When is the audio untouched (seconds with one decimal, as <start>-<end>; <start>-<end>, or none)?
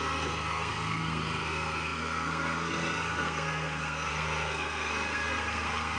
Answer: none